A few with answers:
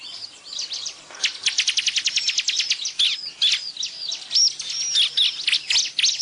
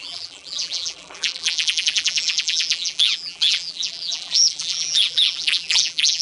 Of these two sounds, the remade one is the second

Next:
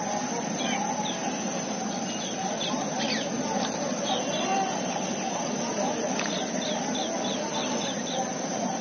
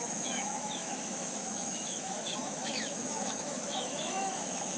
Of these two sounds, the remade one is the second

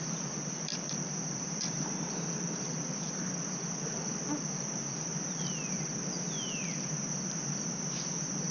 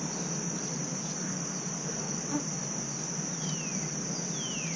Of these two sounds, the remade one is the first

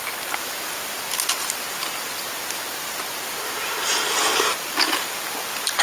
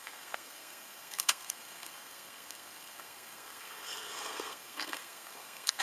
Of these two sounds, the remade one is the second